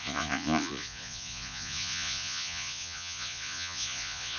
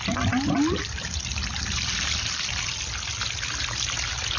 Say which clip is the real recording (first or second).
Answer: second